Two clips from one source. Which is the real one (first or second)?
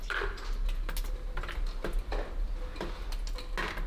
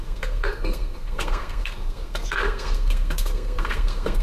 first